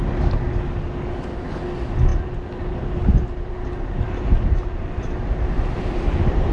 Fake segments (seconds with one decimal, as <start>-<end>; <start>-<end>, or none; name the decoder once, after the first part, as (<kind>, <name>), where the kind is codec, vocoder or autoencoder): none